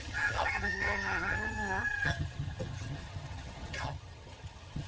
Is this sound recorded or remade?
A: remade